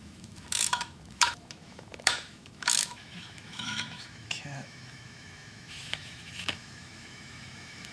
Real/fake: fake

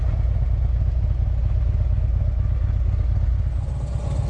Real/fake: real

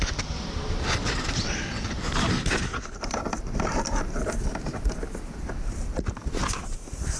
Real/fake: fake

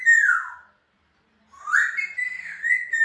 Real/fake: real